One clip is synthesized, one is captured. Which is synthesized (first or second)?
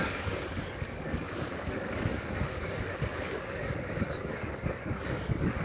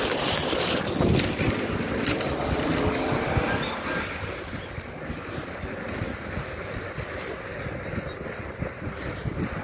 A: first